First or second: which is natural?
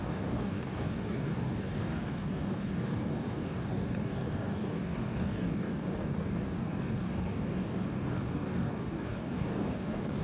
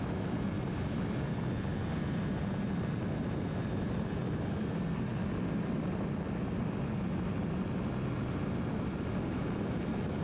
second